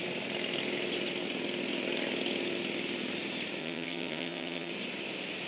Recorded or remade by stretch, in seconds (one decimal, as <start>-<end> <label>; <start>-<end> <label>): 0.0-3.6 recorded; 3.6-4.7 remade; 4.7-5.5 recorded